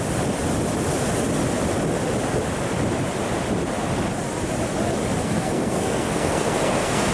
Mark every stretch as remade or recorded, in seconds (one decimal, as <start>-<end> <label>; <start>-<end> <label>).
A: 0.0-5.2 recorded; 5.2-7.1 remade